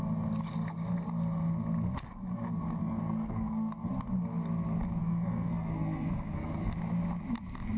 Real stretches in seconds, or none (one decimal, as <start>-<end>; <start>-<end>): 0.0-2.8; 3.9-5.0; 6.7-7.8